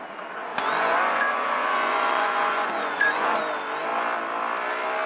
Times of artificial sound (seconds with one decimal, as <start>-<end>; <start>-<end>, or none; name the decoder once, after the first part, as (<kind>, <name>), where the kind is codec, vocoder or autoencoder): 0.5-3.4 (vocoder, Vocos)